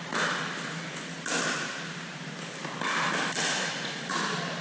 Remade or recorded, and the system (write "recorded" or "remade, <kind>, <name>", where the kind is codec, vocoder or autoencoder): recorded